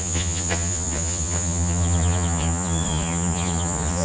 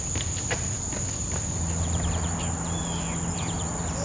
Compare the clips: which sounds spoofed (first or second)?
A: first